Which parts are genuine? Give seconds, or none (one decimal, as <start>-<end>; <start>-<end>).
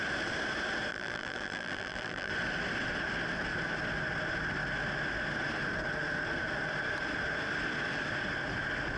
0.0-0.9; 2.3-9.0